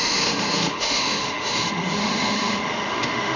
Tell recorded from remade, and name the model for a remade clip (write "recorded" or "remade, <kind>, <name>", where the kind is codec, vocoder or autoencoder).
remade, autoencoder, DAC-VAE